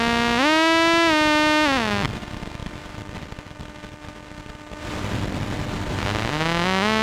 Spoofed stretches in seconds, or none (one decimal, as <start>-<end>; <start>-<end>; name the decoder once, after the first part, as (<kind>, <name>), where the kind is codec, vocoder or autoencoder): none

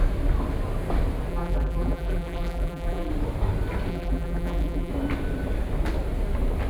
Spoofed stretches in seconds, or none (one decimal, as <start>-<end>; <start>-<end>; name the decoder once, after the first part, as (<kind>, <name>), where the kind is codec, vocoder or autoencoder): 1.3-3.1 (vocoder, BigVGAN v2); 3.9-4.9

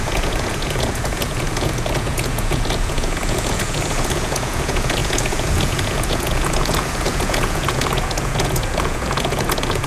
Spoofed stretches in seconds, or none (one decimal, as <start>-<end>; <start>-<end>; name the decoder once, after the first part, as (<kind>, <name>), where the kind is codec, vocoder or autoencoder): 0.0-9.9 (vocoder, Vocos)